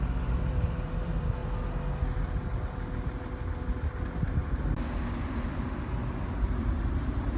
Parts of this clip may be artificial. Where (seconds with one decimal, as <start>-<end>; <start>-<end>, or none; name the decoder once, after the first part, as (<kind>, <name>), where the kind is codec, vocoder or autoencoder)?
0.0-1.4 (vocoder, BigVGAN v2); 5.5-7.4